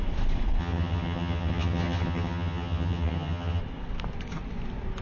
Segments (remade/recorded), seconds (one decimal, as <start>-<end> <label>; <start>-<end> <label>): 0.0-0.6 recorded; 0.6-3.6 remade; 3.6-5.0 recorded